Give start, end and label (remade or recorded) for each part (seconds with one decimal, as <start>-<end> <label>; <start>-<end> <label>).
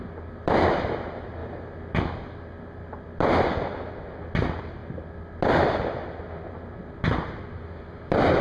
0.0-8.4 recorded